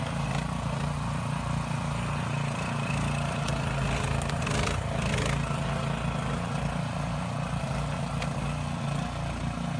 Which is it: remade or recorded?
recorded